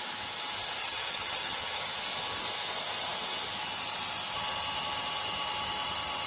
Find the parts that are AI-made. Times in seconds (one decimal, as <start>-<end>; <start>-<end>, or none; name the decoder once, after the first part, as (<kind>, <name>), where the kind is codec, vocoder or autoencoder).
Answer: 0.8-1.8 (vocoder, HiFi-GAN)